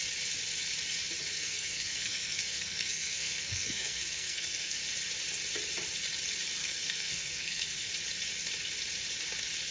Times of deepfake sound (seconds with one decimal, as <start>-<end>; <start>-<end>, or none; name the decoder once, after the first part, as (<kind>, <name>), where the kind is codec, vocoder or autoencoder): 1.3-4.8 (codec, SNAC); 6.6-7.9